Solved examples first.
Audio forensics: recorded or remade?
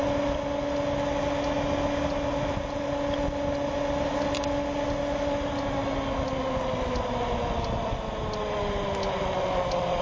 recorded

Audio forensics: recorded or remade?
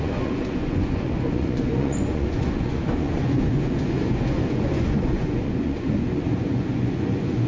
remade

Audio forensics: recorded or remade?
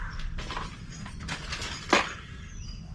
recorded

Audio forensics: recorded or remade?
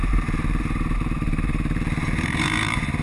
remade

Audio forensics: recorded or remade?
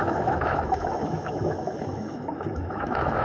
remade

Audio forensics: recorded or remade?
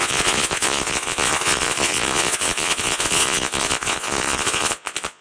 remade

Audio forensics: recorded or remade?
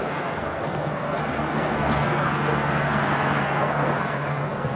remade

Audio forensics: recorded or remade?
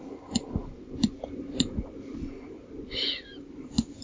remade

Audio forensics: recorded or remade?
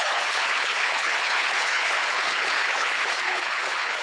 remade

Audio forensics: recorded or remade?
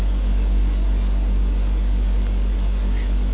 remade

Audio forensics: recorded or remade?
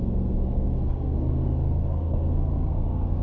remade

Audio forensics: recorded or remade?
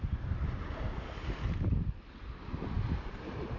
recorded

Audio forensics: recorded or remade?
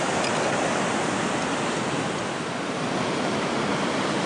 recorded